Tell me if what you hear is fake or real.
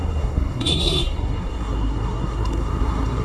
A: fake